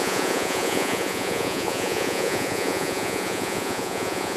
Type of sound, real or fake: fake